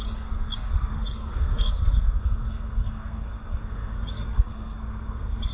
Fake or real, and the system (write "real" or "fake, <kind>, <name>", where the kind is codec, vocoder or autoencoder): fake, codec, SNAC